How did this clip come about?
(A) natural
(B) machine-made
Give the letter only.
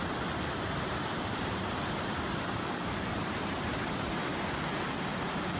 A